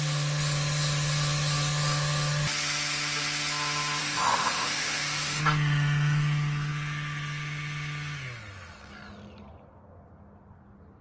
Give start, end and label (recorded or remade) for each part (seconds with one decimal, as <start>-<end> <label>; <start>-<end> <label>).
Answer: 0.0-4.0 recorded; 4.0-5.4 remade; 5.4-11.0 recorded

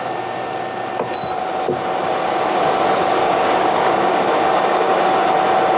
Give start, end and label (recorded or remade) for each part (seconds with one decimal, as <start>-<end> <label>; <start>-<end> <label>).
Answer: 0.0-3.2 recorded; 3.2-5.0 remade; 5.0-5.8 recorded

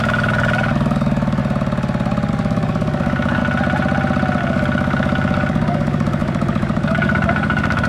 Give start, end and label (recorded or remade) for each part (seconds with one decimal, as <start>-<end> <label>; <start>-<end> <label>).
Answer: 0.0-1.4 remade; 1.4-2.3 recorded; 2.3-3.4 remade; 3.4-4.4 recorded; 4.4-7.9 remade

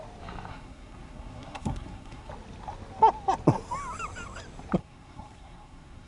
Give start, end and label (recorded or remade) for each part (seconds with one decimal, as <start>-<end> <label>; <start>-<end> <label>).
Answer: 0.0-0.5 recorded; 0.5-2.3 remade; 2.3-4.8 recorded; 4.8-6.1 remade

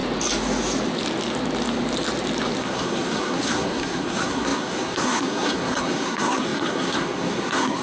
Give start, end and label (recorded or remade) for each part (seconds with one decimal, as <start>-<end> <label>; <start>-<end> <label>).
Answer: 0.0-2.6 recorded; 2.6-7.8 remade

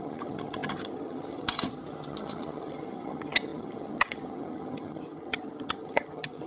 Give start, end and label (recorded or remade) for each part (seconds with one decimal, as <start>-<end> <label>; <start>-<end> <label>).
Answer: 0.0-6.5 remade